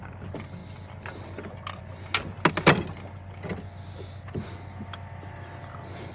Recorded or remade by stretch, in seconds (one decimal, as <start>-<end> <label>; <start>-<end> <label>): 0.0-6.1 recorded